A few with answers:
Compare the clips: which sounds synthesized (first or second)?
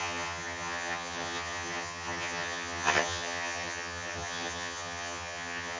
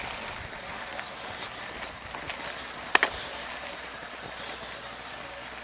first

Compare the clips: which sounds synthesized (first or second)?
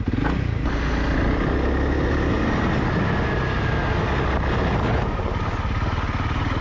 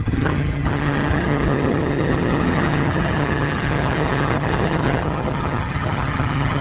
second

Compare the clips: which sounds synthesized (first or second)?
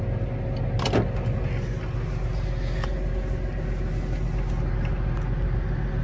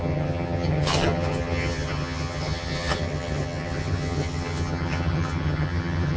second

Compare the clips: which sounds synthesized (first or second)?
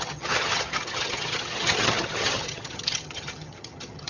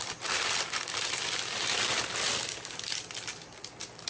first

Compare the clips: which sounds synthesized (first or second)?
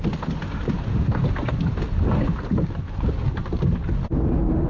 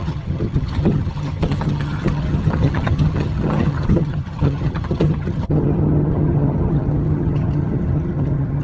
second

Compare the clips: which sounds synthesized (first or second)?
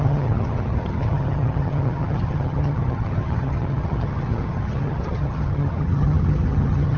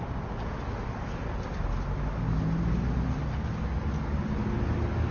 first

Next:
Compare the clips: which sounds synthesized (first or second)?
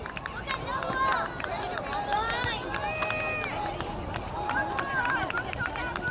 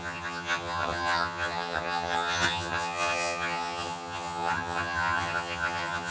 second